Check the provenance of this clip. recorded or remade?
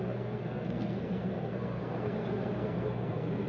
remade